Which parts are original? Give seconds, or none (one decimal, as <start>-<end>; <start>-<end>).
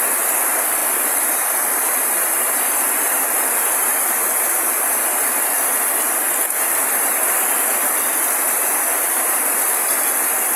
0.0-0.8; 4.2-10.6